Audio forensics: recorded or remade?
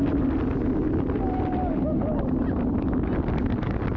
recorded